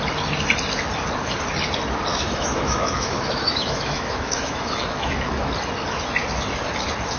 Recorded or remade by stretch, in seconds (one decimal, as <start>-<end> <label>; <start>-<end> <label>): 0.0-2.1 recorded; 2.1-5.5 remade; 5.5-7.2 recorded